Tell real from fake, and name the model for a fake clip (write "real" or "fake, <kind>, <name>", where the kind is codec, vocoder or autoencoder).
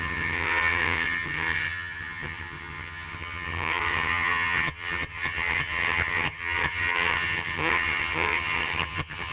fake, vocoder, HiFi-GAN